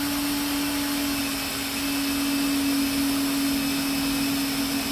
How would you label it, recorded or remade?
recorded